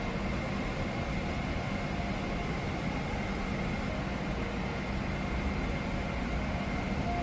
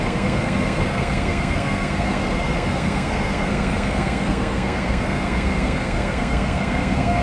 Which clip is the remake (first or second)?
second